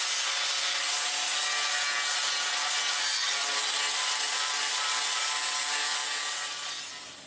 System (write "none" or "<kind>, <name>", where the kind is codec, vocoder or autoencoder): none